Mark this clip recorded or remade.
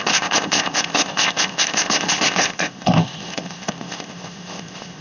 remade